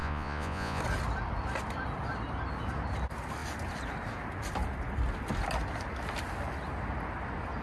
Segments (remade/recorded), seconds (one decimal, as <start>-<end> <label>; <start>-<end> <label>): 0.0-0.8 remade; 0.8-7.6 recorded